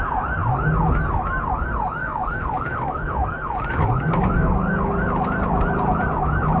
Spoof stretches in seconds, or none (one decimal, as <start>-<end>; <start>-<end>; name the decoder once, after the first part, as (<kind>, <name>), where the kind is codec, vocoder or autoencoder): 2.0-4.9 (codec, DAC)